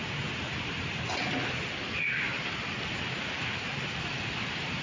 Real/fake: real